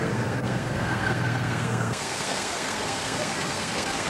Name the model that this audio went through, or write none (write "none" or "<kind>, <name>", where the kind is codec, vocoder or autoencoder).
codec, SNAC